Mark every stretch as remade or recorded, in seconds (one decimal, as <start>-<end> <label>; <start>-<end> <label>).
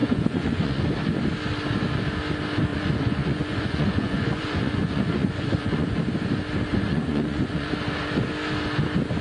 0.0-0.9 remade; 0.9-2.7 recorded; 2.7-6.0 remade; 6.0-6.7 recorded; 6.7-7.7 remade; 7.7-9.2 recorded